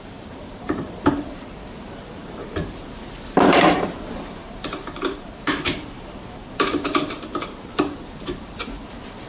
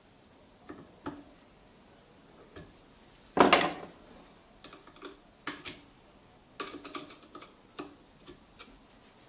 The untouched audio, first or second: second